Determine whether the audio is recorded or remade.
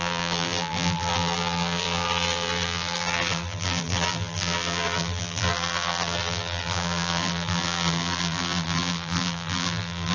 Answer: remade